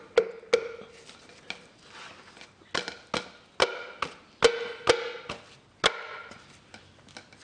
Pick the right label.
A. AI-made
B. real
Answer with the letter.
B